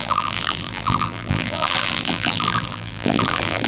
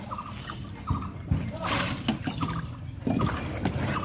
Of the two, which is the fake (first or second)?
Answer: first